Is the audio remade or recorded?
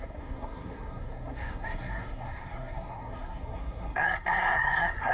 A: remade